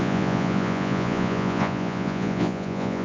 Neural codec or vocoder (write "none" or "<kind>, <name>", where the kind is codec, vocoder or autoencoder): vocoder, Vocos